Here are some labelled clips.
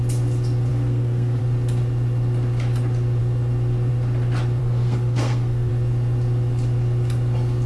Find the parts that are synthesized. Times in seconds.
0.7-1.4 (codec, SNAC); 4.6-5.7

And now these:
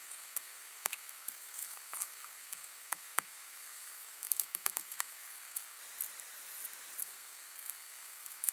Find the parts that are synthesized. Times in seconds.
0.0-5.8 (codec, SNAC); 7.0-8.5